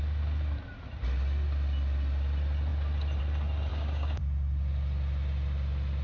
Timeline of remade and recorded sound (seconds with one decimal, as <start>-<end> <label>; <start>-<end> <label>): 0.0-3.7 recorded; 3.7-4.2 remade; 4.2-6.0 recorded

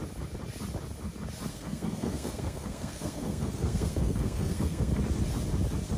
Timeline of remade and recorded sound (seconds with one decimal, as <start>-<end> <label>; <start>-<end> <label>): 0.0-1.5 recorded; 1.5-4.9 remade; 4.9-6.0 recorded